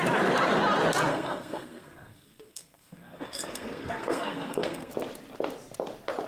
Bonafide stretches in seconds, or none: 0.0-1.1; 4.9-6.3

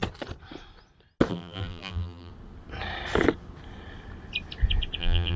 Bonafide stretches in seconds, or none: 0.0-1.3; 2.3-5.0

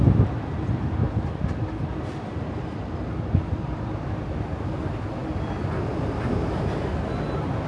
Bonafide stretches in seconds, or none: 0.0-7.7